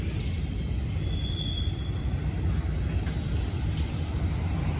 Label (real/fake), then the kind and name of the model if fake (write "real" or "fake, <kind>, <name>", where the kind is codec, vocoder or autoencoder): real